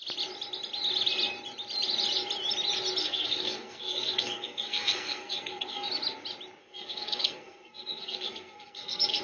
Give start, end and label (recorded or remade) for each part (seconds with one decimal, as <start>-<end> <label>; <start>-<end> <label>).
0.0-3.0 recorded; 3.0-5.9 remade; 5.9-6.6 recorded; 6.6-9.2 remade